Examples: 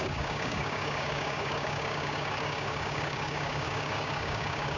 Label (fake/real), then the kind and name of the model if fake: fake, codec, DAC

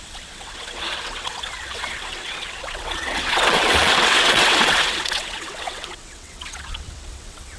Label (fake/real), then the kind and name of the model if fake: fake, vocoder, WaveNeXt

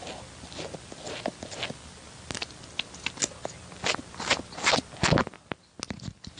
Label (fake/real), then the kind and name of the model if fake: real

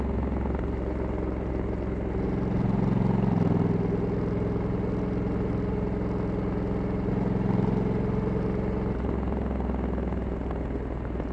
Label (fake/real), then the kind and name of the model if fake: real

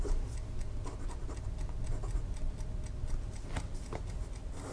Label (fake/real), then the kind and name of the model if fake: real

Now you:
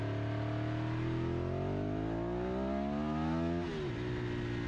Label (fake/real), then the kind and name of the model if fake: real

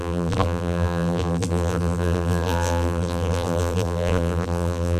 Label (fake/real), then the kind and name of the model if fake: fake, vocoder, BigVGAN v2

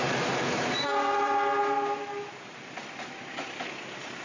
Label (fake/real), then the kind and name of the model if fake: real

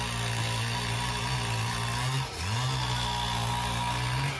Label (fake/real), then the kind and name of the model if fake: real